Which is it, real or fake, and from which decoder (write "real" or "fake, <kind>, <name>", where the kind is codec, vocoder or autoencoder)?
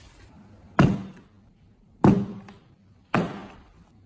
real